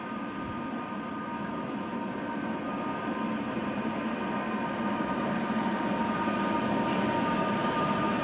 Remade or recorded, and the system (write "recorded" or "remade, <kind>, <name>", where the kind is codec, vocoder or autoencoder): recorded